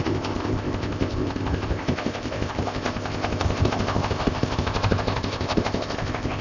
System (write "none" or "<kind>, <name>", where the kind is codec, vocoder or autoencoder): codec, ZipCodec